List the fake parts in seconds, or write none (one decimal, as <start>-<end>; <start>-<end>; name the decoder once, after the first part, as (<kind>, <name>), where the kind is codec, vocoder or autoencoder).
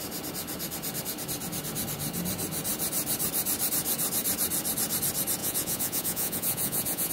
5.4-7.1 (vocoder, Vocos)